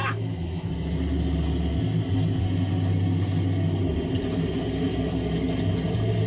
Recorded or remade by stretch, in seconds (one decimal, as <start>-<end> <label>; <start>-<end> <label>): 0.0-0.7 remade; 0.7-6.3 recorded